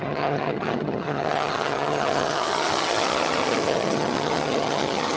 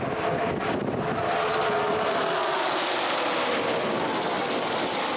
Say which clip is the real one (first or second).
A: second